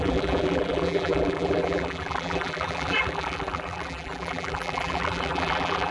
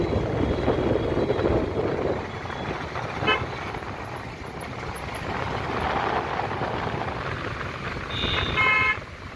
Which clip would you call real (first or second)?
second